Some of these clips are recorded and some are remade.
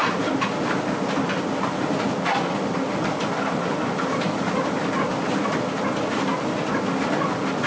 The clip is recorded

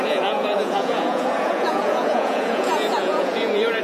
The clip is remade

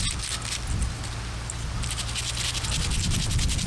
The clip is recorded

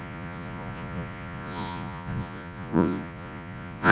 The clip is remade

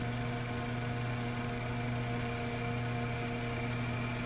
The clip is recorded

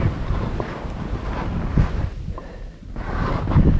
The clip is recorded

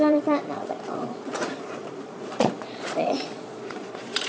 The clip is remade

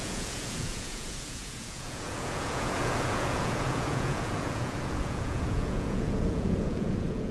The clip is remade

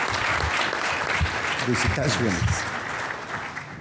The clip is recorded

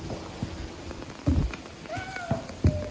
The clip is recorded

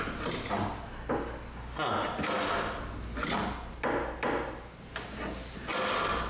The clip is recorded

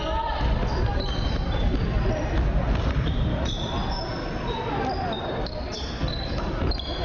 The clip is recorded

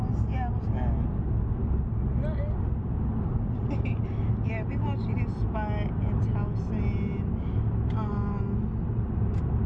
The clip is recorded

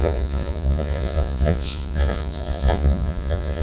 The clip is remade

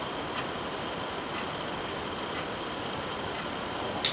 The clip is recorded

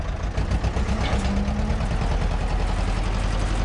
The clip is recorded